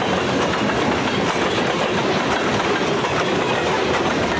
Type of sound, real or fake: real